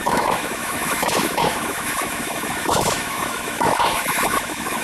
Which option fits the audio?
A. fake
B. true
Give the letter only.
A